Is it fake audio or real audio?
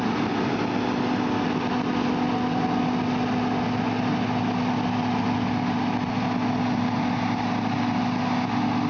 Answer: real